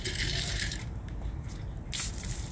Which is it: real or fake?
fake